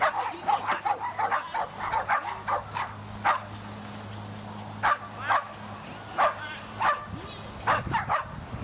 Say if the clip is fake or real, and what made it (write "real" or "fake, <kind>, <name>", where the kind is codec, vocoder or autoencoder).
real